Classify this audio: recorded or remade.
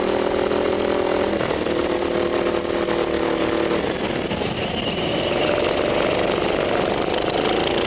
recorded